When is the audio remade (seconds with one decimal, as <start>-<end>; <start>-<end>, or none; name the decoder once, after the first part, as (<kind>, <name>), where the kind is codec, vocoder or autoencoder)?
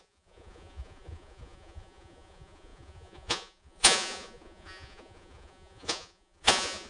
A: 0.0-6.9 (vocoder, Vocos)